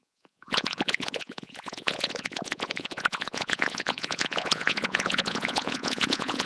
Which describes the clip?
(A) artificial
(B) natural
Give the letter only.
A